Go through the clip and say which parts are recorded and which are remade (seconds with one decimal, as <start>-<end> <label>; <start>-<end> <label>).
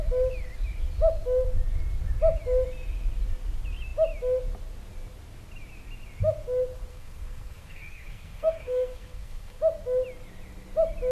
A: 0.0-6.9 recorded; 6.9-9.6 remade; 9.6-11.1 recorded